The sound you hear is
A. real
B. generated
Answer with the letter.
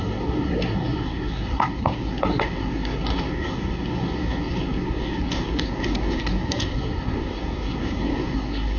B